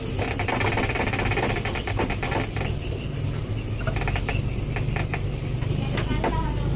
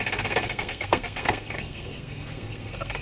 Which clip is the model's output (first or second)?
second